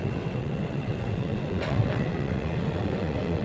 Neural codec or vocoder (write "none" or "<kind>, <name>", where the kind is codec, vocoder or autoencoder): vocoder, WaveNeXt